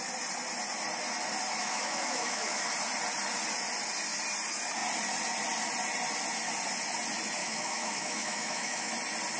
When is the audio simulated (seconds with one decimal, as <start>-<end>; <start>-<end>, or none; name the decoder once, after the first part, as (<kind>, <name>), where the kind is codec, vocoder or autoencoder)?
1.6-2.7 (autoencoder, DAC-VAE); 7.4-8.9